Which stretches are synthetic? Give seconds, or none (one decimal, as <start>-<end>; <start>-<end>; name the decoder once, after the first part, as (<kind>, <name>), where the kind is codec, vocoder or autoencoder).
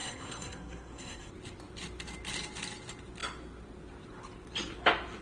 0.0-1.3 (codec, SNAC)